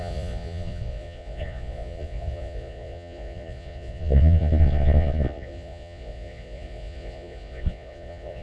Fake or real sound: fake